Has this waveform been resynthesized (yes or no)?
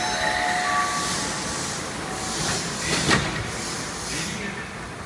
no